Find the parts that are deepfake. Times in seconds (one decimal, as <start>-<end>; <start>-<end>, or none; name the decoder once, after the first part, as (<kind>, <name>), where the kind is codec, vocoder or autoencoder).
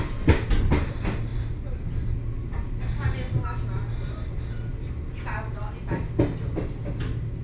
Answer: none